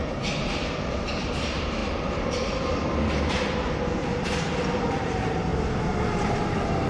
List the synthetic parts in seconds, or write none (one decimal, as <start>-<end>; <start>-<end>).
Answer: 0.0-1.8; 3.3-5.5; 6.1-6.9